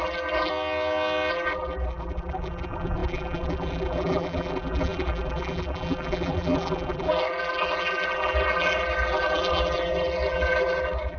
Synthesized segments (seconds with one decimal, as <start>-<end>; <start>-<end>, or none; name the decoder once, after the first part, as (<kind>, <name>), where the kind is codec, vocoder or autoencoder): 0.0-0.5 (vocoder, BigVGAN v2); 1.3-11.2